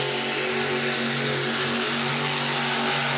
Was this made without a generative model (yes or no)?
yes